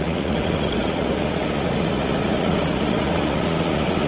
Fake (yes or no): yes